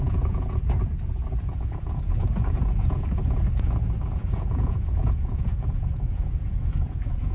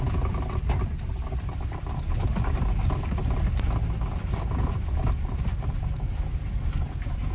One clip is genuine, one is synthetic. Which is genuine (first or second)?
second